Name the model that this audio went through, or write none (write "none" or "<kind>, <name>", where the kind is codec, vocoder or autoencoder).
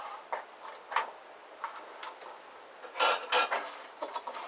none